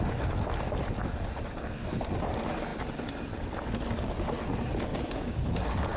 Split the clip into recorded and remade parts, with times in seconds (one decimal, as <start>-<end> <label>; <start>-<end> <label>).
0.0-4.9 recorded; 4.9-5.5 remade; 5.5-6.0 recorded